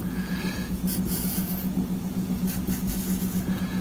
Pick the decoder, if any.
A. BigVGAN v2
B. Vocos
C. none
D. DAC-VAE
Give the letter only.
B